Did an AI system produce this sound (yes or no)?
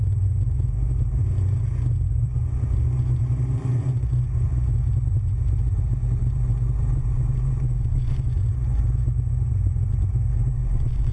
yes